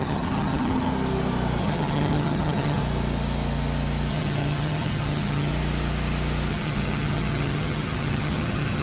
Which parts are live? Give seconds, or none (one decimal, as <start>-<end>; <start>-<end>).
0.9-1.6; 2.8-4.1; 5.5-6.5